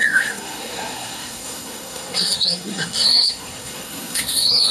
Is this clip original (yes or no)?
no